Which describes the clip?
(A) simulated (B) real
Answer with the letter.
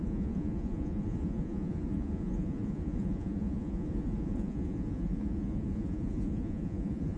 A